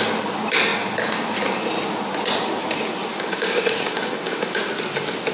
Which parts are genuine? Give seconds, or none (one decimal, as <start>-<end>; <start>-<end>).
0.0-3.1; 4.6-5.3